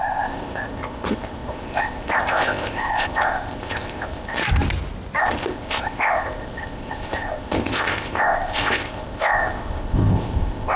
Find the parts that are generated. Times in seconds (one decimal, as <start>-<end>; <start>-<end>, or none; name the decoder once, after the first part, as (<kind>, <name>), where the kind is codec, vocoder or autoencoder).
0.0-4.4 (codec, ZipCodec); 5.2-10.8

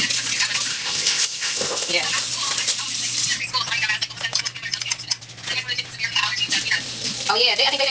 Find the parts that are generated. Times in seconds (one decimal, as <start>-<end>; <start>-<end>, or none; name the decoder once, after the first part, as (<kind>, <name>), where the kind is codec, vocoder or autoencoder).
0.7-1.9 (codec, ZipCodec)